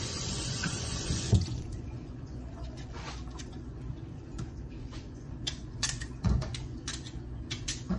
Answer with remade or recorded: remade